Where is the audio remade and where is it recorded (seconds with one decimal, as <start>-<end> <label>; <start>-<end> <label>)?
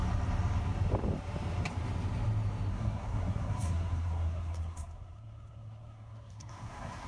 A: 0.0-2.7 recorded; 2.7-7.1 remade